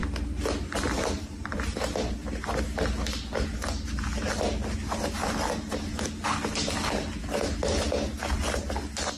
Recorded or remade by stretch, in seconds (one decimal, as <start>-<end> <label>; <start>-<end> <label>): 0.0-9.2 recorded